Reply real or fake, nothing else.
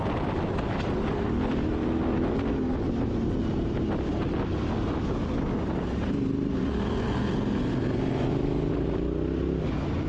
real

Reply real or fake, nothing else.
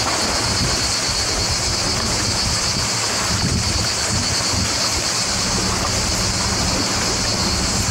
real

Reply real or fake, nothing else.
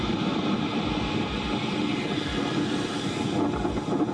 real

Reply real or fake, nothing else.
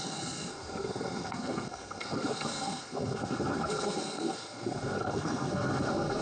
fake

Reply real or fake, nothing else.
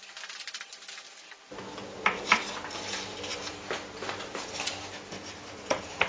real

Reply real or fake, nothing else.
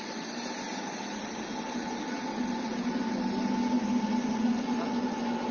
real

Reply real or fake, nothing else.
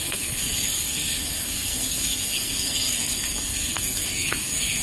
fake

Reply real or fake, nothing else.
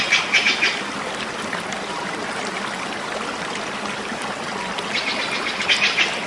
real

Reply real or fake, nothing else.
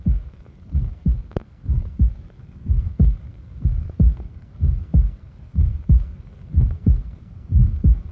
fake